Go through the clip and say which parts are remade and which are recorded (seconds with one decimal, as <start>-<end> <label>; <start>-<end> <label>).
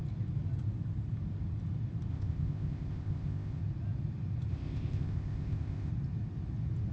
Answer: 0.0-2.1 recorded; 2.1-3.6 remade; 3.6-4.5 recorded; 4.5-5.9 remade; 5.9-6.9 recorded